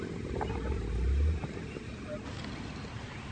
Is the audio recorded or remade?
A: recorded